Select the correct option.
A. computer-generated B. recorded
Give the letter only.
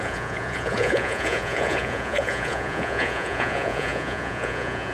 A